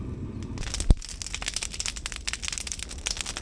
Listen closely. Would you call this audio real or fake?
real